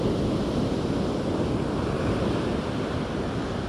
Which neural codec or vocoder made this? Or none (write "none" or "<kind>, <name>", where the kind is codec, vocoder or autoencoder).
none